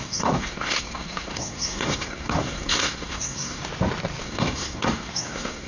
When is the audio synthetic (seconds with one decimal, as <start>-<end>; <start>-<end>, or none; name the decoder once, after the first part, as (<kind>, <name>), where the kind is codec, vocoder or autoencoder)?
0.0-3.6 (codec, SNAC); 4.2-5.7